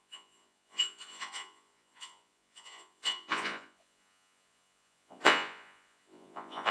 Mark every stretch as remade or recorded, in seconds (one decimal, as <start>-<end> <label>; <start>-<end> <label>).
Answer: 0.0-6.7 remade